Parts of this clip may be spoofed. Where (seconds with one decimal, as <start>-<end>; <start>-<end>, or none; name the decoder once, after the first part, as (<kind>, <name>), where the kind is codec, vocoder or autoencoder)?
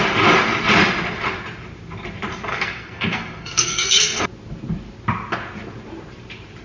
2.5-4.2 (codec, SNAC)